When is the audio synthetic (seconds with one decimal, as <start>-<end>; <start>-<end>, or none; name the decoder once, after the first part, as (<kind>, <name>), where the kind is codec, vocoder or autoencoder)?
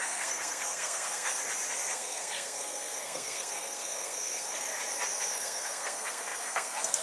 0.0-1.3 (codec, SNAC); 1.9-4.7; 5.2-7.0